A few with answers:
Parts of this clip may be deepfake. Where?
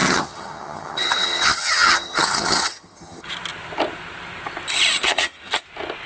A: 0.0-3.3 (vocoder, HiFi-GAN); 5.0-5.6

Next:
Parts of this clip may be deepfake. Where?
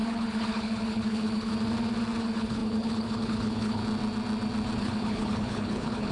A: 0.0-1.5 (codec, HILCodec); 2.2-3.8; 4.8-6.1